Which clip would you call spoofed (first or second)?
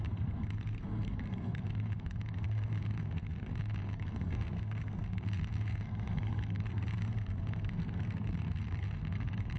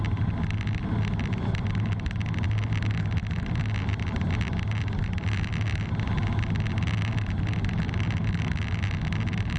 first